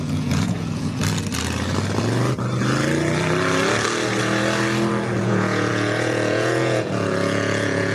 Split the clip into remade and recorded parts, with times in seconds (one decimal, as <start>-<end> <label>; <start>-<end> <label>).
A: 0.0-1.0 remade; 1.0-5.2 recorded; 5.2-7.9 remade